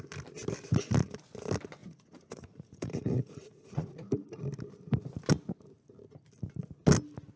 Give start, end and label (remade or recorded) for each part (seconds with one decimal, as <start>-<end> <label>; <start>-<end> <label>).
0.0-1.8 recorded; 1.8-4.4 remade; 4.4-7.4 recorded